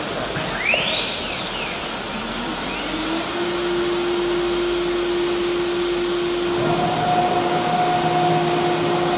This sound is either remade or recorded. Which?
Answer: recorded